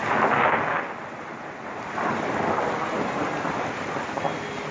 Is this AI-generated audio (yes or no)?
no